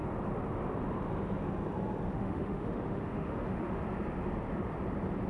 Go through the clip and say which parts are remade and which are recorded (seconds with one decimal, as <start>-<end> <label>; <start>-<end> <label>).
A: 0.0-2.1 recorded; 2.1-3.8 remade; 3.8-5.3 recorded